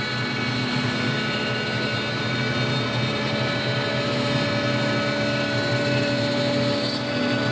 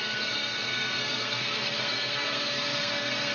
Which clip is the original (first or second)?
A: first